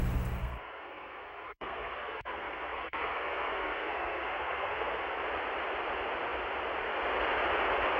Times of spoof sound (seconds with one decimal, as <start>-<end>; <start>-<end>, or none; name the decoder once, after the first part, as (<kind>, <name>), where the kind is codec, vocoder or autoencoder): 0.4-5.2 (codec, SNAC)